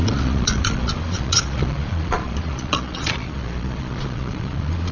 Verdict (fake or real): fake